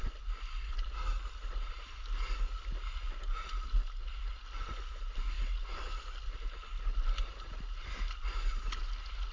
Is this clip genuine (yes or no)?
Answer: yes